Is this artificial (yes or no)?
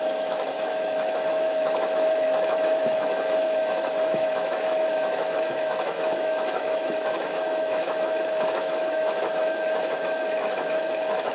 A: yes